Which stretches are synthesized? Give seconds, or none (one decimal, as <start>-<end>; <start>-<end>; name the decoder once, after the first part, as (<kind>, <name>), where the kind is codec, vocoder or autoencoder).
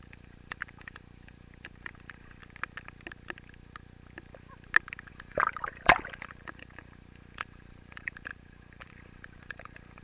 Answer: 0.0-2.4 (vocoder, BigVGAN v2); 5.1-10.0